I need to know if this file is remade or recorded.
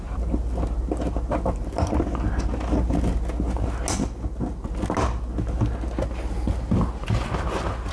recorded